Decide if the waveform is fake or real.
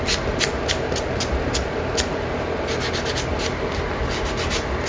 real